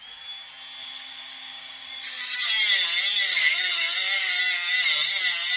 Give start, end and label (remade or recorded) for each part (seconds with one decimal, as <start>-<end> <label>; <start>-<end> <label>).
0.0-0.8 recorded; 0.8-2.5 remade; 2.5-3.3 recorded; 3.3-4.4 remade; 4.4-5.6 recorded